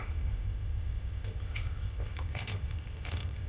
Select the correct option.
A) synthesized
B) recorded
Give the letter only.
A